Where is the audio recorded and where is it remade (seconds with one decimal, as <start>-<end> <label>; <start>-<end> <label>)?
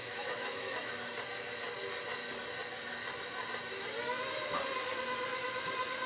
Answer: 0.0-0.9 remade; 0.9-6.1 recorded